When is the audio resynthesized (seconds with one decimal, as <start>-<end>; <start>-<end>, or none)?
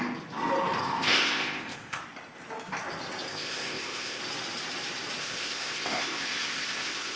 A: 0.8-2.0; 3.3-4.2; 5.2-7.2